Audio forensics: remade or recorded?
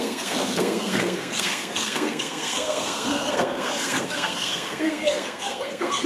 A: remade